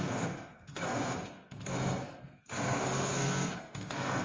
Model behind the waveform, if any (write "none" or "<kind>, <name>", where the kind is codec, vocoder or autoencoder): codec, SNAC